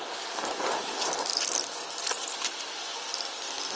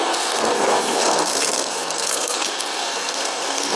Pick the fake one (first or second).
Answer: second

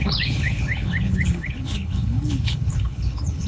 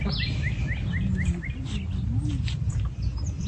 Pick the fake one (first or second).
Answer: first